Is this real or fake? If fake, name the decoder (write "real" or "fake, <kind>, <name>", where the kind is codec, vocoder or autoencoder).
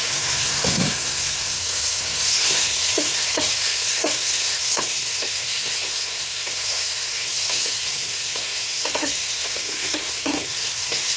fake, codec, SNAC